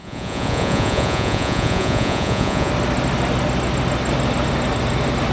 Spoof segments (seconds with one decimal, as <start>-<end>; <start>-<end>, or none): 0.0-2.7